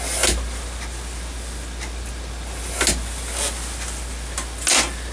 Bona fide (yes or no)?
yes